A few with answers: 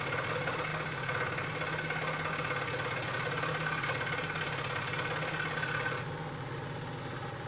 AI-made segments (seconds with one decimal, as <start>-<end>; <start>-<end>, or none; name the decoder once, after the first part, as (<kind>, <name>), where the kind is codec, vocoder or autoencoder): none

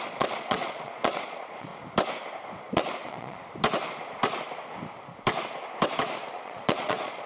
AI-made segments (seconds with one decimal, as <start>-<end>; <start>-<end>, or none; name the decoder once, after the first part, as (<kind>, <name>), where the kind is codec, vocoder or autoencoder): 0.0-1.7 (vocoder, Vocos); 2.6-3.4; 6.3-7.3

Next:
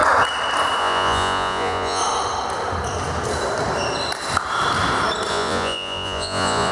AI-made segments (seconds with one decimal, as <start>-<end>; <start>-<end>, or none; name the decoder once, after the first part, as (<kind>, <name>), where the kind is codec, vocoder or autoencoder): 0.8-2.0 (vocoder, Vocos); 5.3-6.7

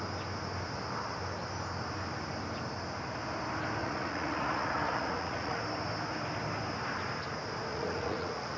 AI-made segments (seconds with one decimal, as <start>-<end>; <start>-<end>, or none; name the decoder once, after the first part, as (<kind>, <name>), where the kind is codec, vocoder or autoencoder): 3.8-5.6 (vocoder, Vocos); 7.7-8.6